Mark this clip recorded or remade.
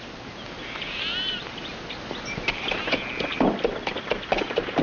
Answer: recorded